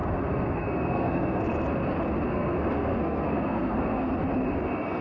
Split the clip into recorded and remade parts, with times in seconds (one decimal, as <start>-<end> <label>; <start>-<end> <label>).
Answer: 0.0-1.4 remade; 1.4-2.3 recorded; 2.3-4.1 remade; 4.1-5.0 recorded